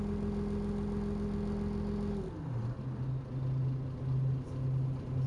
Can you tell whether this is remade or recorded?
recorded